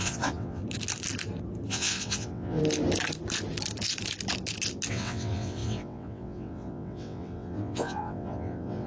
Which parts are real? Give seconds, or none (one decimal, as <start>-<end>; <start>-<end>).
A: 0.6-1.7; 2.6-4.9